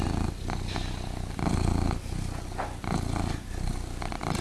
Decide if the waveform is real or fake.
real